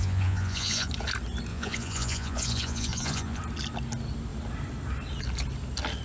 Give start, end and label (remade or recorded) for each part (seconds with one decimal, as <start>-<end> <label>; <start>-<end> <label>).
0.0-0.9 remade; 0.9-1.5 recorded; 1.5-3.4 remade; 3.4-6.0 recorded